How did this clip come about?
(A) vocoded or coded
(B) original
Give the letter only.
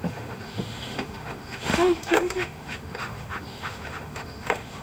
A